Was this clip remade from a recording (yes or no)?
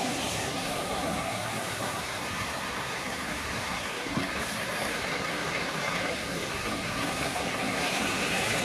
yes